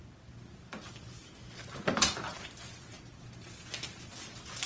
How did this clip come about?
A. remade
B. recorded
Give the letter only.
B